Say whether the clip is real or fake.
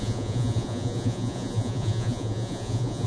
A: fake